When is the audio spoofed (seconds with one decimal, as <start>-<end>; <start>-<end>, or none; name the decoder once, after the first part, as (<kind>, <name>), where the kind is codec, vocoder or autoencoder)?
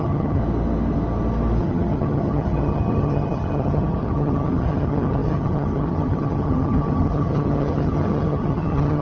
0.0-0.4 (vocoder, HiFi-GAN); 1.6-9.0